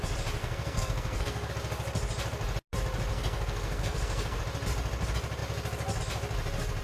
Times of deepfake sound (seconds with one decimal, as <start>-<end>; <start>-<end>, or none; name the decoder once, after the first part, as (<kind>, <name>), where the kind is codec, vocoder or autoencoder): 0.4-1.5 (codec, SNAC); 3.1-4.4